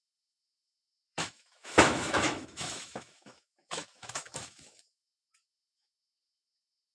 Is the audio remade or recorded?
remade